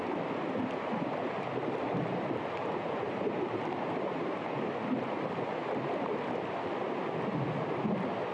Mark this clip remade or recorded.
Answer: recorded